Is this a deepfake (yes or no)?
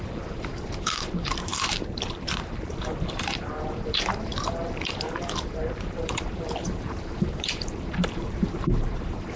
yes